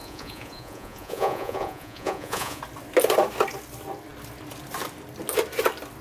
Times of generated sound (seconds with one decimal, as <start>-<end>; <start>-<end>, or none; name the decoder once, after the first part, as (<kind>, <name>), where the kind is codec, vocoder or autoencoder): 0.0-2.6 (vocoder, Vocos)

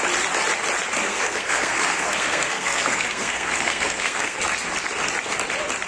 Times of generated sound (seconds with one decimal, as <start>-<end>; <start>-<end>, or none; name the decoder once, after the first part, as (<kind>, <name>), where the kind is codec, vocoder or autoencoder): 1.0-4.4 (codec, SNAC)

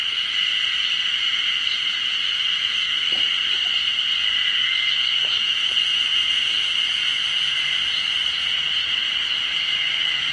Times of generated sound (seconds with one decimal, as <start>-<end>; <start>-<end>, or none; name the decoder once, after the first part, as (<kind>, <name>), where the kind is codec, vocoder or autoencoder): 2.2-3.2 (autoencoder, DAC-VAE); 4.6-5.6; 9.8-10.3

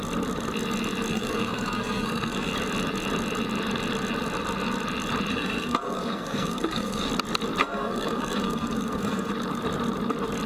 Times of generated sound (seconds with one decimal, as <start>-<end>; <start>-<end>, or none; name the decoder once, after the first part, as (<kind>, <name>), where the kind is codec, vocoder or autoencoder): 1.1-2.5 (codec, SNAC); 5.3-7.1; 7.6-9.3

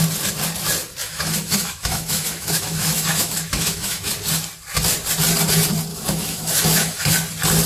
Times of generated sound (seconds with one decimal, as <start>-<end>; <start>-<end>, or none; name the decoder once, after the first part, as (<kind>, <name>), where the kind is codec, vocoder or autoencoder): 1.0-4.1 (autoencoder, DAC-VAE); 5.9-7.1

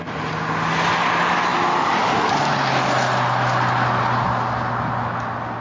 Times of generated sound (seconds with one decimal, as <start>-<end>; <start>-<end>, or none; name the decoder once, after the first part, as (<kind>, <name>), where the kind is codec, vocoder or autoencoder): none